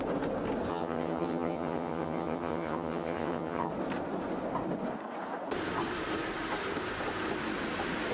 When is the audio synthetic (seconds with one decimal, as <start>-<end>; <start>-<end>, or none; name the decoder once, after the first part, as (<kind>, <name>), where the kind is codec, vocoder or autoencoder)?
0.7-3.7 (vocoder, HiFi-GAN)